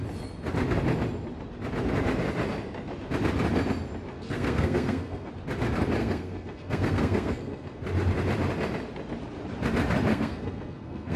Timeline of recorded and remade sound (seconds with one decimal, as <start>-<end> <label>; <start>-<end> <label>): 0.0-4.1 recorded; 4.1-5.3 remade; 5.3-6.0 recorded; 6.0-7.8 remade; 7.8-10.1 recorded; 10.1-11.2 remade